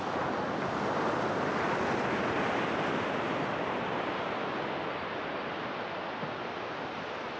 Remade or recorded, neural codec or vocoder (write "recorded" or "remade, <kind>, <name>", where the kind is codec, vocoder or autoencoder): recorded